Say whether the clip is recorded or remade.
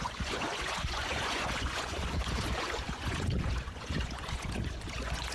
remade